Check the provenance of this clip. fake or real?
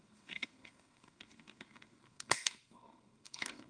fake